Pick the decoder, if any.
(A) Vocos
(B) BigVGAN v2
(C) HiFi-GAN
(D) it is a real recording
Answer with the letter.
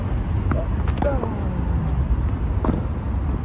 D